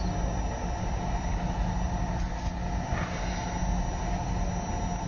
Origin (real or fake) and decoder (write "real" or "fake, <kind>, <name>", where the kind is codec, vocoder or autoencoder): real